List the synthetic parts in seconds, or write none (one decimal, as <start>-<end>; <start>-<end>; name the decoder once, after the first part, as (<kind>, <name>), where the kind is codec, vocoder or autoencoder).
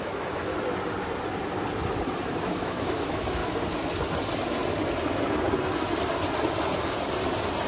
0.0-0.5 (autoencoder, DAC-VAE); 2.2-3.4